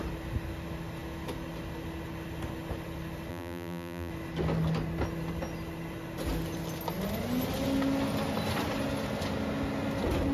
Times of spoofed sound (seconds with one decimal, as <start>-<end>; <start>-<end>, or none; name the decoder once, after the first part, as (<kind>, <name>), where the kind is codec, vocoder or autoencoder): 3.3-4.1 (vocoder, BigVGAN v2)